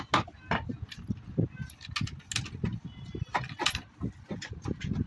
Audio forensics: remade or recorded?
recorded